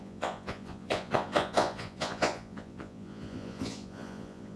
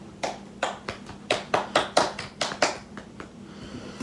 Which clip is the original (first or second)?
second